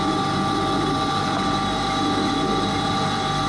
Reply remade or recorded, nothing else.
recorded